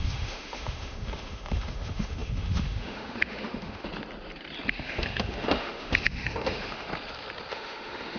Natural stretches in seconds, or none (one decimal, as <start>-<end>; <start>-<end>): 3.9-4.7; 6.9-7.5